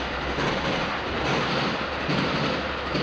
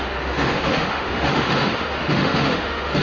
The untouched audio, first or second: first